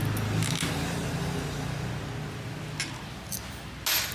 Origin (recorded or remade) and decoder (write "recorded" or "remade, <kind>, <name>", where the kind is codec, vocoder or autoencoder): recorded